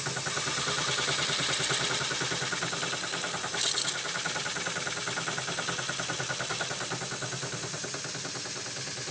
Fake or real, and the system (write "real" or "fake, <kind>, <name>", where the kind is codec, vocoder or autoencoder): real